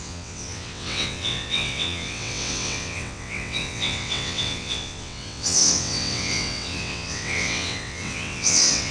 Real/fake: fake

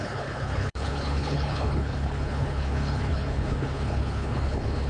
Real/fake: fake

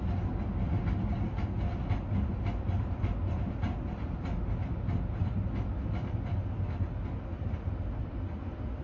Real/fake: real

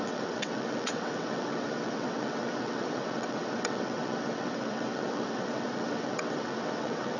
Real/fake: fake